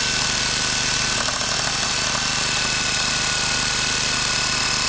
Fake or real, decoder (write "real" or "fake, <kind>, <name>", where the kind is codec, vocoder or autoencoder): real